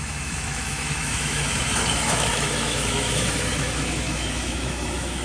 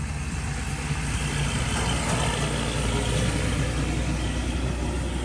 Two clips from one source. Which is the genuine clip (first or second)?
second